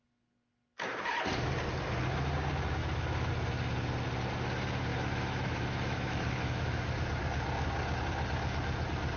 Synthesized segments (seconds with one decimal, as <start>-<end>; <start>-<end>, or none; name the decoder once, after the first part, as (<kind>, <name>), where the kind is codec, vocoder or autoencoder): 2.8-3.3 (autoencoder, DAC-VAE); 4.9-6.8